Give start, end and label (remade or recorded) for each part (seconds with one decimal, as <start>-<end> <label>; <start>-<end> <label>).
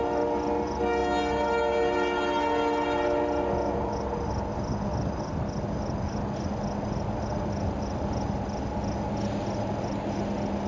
0.0-10.7 recorded